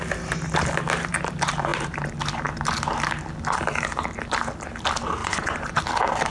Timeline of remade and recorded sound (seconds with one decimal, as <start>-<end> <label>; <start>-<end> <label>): 0.0-5.2 recorded; 5.2-5.8 remade; 5.8-6.3 recorded